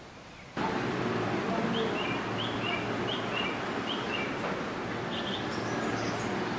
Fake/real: real